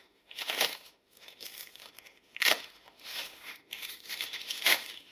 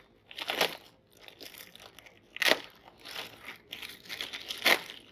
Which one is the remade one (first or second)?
first